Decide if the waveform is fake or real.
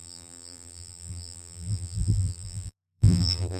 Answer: fake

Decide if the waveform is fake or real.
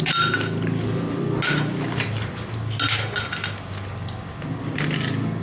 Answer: real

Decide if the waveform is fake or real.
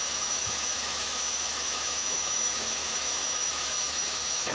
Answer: fake